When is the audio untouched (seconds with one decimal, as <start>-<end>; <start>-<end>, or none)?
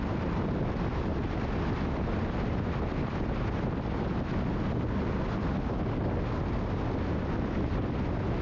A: 0.0-8.4